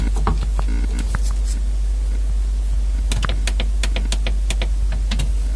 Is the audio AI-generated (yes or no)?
no